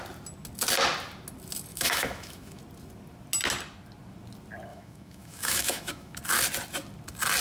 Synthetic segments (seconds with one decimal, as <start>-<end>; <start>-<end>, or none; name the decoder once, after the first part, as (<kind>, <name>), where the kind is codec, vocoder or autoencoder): 1.7-2.6 (autoencoder, DAC-VAE); 4.7-6.2